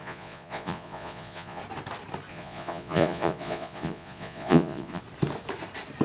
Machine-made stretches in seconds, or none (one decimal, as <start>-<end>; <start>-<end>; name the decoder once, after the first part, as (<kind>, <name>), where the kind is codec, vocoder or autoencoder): 0.0-1.6 (vocoder, Vocos); 2.3-5.0